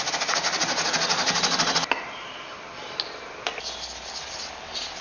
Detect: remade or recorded recorded